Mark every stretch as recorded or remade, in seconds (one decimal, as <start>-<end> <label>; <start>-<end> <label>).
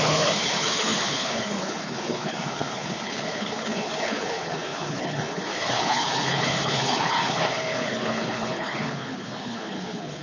0.0-10.2 remade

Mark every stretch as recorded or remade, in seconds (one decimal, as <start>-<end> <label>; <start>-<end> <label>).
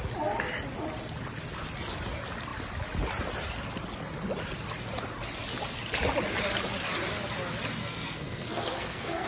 0.0-7.8 recorded; 7.8-9.3 remade